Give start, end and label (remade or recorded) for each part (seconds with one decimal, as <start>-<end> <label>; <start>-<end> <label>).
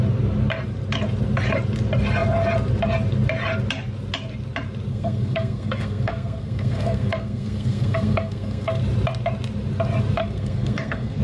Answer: 0.0-4.9 recorded; 4.9-8.8 remade; 8.8-10.2 recorded; 10.2-11.2 remade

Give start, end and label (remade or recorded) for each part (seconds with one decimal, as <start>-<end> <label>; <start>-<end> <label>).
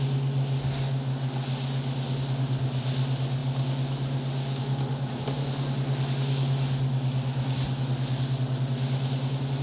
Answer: 0.0-9.6 recorded